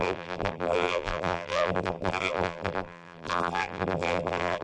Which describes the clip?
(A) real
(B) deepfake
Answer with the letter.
B